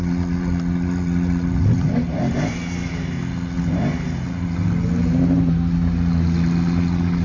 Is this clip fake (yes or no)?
no